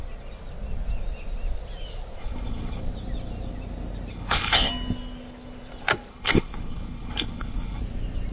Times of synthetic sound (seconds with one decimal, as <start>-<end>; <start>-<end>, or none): 2.2-2.8; 4.1-4.7; 6.1-7.8